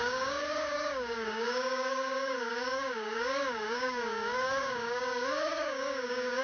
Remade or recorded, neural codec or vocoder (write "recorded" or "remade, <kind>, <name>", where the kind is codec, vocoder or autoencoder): remade, codec, DAC